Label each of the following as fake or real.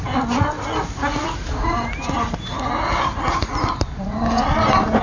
real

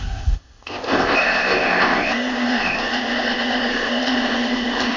fake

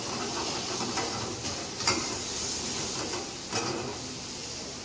real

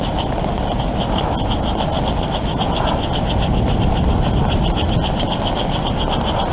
real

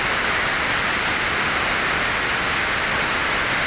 real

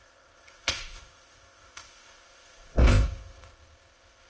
fake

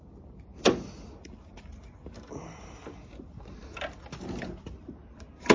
real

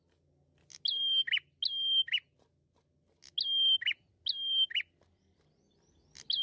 real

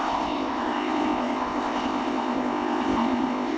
fake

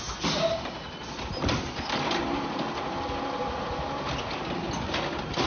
real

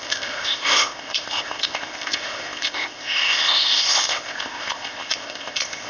fake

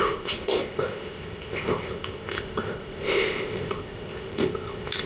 fake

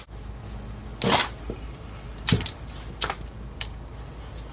real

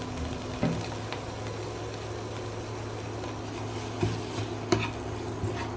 real